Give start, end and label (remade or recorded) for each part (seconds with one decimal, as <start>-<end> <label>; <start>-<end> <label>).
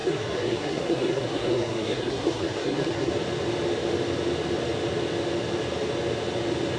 0.0-3.1 remade; 3.1-6.8 recorded